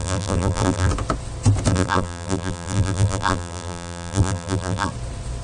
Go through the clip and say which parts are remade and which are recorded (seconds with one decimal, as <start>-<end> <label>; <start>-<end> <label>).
0.0-0.9 remade; 0.9-1.7 recorded; 1.7-4.9 remade; 4.9-5.4 recorded